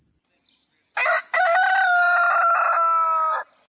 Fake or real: real